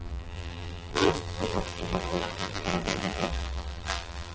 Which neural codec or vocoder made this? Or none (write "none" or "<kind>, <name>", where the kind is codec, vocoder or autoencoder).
vocoder, BigVGAN v2